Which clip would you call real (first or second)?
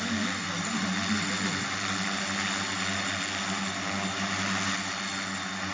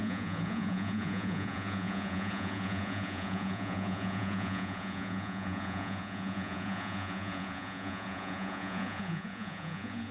first